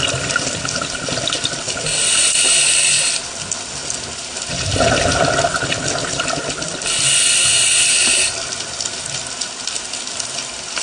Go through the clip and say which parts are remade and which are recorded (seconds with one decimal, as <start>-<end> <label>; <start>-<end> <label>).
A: 0.0-10.8 recorded